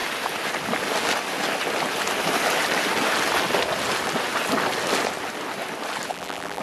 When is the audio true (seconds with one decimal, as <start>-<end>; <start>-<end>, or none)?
0.0-6.1